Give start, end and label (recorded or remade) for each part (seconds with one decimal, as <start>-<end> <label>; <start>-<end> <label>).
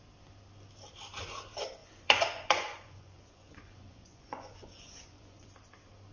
0.0-1.8 recorded; 1.8-5.5 remade; 5.5-6.1 recorded